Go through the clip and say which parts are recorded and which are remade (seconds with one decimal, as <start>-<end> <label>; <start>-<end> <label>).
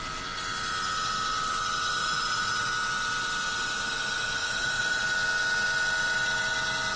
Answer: 0.0-2.0 recorded; 2.0-2.7 remade; 2.7-4.4 recorded; 4.4-5.0 remade; 5.0-7.0 recorded